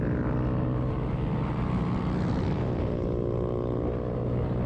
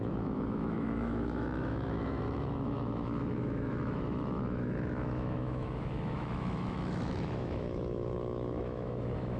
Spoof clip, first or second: second